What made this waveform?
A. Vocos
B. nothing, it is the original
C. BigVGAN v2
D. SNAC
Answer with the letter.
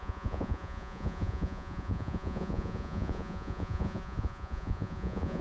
A